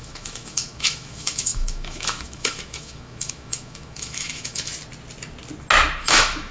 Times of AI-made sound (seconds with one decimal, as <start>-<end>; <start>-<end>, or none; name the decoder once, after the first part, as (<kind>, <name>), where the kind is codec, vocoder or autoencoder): 0.0-4.7 (autoencoder, DAC-VAE); 6.0-6.5